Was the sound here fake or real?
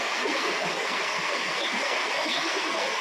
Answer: fake